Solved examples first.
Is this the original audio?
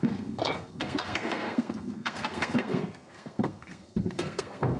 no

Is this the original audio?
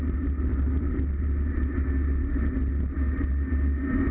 yes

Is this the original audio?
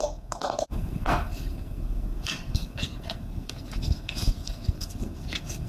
no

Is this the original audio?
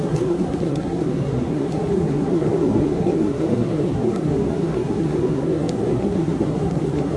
no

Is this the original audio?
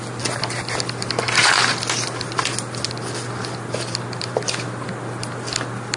yes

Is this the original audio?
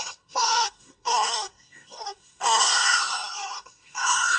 no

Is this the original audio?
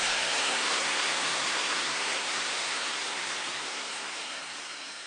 no